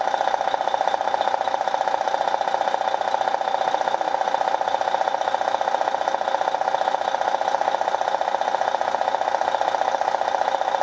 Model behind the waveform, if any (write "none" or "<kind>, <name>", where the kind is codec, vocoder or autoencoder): none